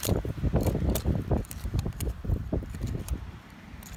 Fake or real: fake